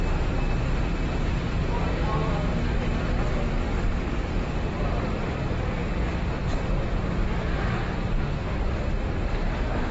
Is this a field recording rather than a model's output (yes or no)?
yes